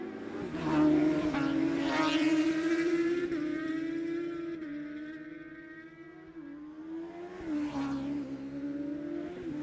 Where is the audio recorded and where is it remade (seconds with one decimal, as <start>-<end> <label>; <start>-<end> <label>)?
0.0-1.0 recorded; 1.0-3.7 remade; 3.7-9.6 recorded